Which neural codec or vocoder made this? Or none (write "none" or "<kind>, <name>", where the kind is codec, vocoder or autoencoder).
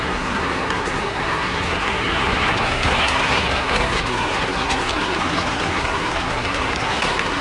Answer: codec, SNAC